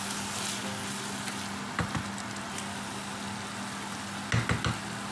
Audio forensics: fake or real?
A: real